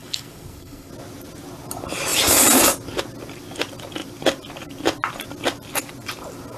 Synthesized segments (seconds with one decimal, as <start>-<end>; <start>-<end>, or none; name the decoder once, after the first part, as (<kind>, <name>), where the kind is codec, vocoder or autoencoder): 0.0-0.9 (codec, SNAC)